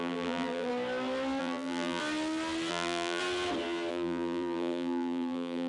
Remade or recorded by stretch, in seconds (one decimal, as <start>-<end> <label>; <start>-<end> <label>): 0.0-0.7 remade; 0.7-1.4 recorded; 1.4-2.0 remade; 2.0-2.7 recorded; 2.7-3.2 remade; 3.2-3.9 recorded; 3.9-5.7 remade